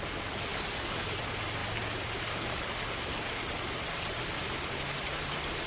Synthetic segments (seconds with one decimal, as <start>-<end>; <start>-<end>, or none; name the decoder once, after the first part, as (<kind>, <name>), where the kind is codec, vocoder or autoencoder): 0.5-1.2 (codec, DAC)